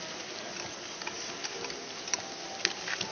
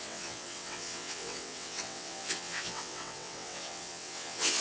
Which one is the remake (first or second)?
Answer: second